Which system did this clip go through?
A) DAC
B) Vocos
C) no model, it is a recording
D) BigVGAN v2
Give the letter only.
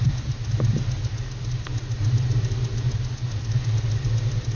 C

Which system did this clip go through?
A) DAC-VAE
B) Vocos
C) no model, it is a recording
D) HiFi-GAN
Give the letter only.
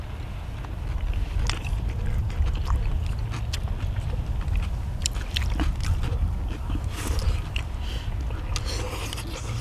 C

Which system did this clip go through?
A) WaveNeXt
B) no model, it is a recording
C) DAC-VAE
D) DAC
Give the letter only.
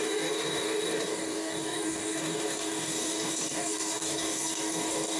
D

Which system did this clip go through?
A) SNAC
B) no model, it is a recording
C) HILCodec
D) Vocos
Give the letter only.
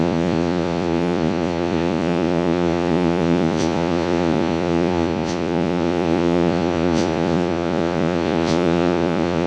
D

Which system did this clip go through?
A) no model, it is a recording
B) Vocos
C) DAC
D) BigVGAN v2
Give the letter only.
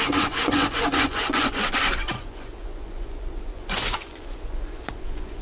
B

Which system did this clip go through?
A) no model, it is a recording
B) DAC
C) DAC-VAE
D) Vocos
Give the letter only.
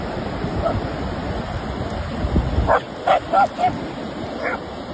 A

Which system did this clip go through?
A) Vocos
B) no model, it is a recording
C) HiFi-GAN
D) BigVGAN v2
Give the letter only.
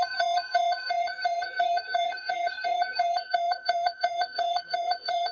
C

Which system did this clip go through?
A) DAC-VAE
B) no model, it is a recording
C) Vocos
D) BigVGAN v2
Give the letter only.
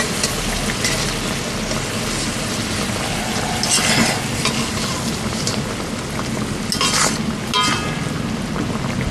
B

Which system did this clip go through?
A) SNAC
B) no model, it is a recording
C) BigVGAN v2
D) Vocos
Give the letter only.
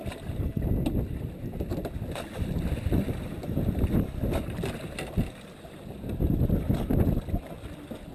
B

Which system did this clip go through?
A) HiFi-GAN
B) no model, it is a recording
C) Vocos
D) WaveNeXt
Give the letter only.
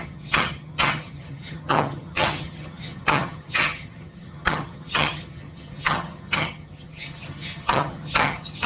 A